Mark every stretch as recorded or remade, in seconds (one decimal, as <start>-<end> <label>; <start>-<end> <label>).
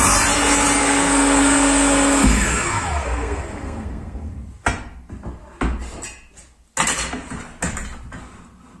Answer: 0.0-0.8 recorded; 0.8-4.3 remade; 4.3-8.8 recorded